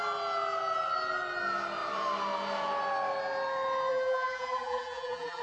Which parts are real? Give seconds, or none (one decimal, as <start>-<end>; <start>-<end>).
0.0-3.9